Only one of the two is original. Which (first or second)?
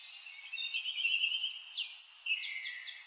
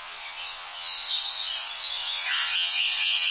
first